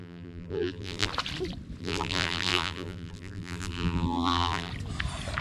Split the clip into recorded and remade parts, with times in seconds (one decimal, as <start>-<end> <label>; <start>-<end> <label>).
0.0-1.1 remade; 1.1-1.8 recorded; 1.8-4.7 remade; 4.7-5.4 recorded